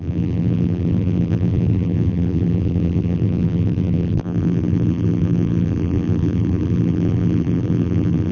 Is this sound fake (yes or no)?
yes